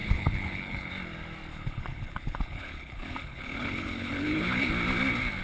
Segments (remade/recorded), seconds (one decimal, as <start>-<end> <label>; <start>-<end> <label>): 0.0-0.9 remade; 0.9-1.5 recorded; 1.5-4.7 remade; 4.7-5.4 recorded